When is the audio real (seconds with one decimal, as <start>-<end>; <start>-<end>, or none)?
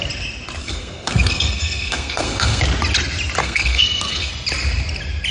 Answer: 0.0-0.6; 2.6-3.4; 4.3-5.3